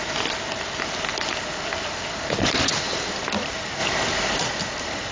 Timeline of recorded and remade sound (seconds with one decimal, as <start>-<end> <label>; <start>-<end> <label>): 0.0-5.1 recorded